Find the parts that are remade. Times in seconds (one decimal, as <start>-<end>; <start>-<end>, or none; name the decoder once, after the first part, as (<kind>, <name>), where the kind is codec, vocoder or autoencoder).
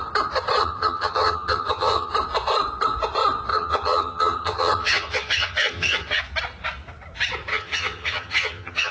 0.6-2.1 (vocoder, HiFi-GAN); 3.5-6.2; 7.5-8.9